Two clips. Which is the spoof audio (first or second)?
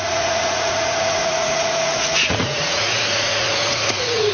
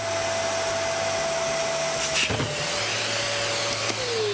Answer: first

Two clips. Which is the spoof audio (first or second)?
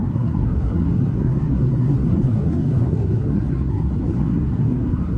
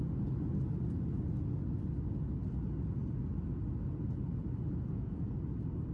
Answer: first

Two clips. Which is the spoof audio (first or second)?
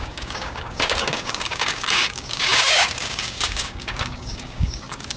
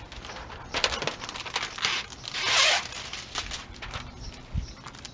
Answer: first